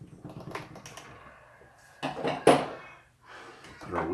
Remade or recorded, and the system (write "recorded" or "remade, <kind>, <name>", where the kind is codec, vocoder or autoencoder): recorded